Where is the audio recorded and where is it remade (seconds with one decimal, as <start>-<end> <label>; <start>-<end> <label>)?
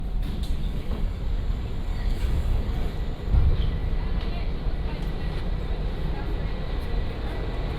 0.0-0.6 recorded; 0.6-1.2 remade; 1.2-1.9 recorded; 1.9-2.9 remade; 2.9-7.8 recorded